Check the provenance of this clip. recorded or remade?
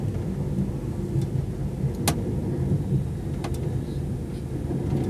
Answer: recorded